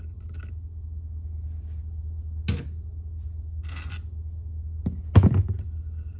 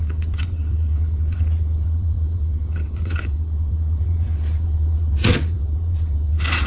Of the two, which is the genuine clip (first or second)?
first